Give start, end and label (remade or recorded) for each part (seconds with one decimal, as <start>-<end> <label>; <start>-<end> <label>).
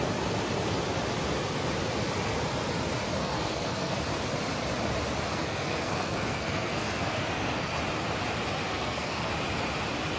0.0-3.2 recorded; 3.2-4.0 remade; 4.0-5.3 recorded; 5.3-7.8 remade; 7.8-8.7 recorded; 8.7-9.3 remade; 9.3-10.2 recorded